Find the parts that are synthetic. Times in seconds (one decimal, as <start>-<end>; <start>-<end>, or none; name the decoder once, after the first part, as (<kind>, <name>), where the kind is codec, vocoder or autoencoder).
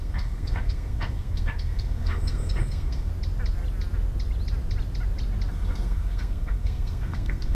0.0-3.1 (codec, SNAC); 5.5-7.5